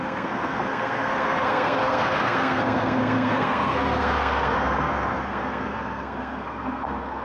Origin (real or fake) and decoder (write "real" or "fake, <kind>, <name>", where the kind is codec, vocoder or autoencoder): fake, codec, SNAC